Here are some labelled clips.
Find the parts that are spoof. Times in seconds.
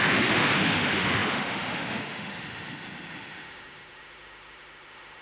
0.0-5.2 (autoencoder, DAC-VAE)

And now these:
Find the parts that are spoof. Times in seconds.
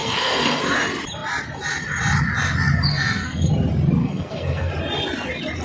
0.0-0.6 (codec, SNAC); 2.9-3.5; 4.0-4.7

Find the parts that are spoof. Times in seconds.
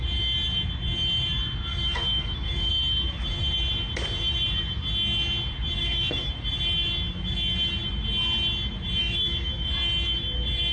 1.7-2.7 (autoencoder, DAC-VAE); 5.8-6.3; 9.0-9.7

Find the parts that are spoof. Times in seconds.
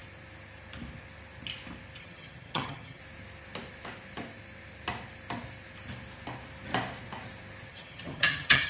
2.0-3.0 (vocoder, HiFi-GAN); 7.7-8.7